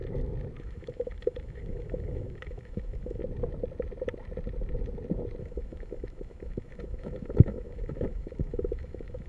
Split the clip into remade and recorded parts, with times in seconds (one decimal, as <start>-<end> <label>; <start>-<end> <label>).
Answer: 0.0-0.6 recorded; 0.6-3.2 remade; 3.2-5.4 recorded; 5.4-9.3 remade